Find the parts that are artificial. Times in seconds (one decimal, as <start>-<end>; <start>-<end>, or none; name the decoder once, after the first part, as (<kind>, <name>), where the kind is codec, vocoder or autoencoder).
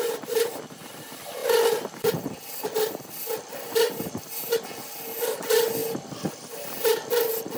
none